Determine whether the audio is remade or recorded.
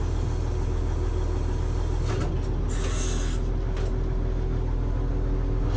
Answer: recorded